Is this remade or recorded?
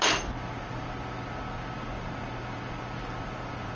recorded